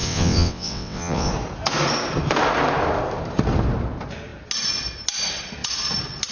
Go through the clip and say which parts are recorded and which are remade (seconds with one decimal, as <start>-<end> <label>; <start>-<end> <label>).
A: 0.0-1.3 remade; 1.3-6.3 recorded